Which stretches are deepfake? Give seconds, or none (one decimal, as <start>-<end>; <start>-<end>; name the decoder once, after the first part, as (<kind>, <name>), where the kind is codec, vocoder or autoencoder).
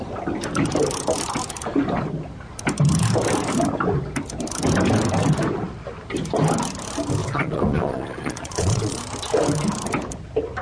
7.2-9.0 (vocoder, Vocos)